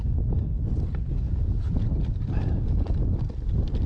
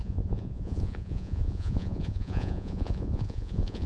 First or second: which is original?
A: first